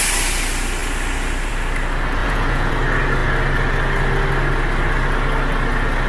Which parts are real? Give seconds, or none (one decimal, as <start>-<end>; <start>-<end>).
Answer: 0.0-2.2; 2.7-6.1